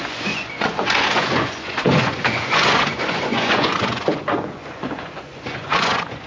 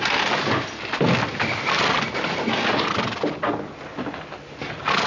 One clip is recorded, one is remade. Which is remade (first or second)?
first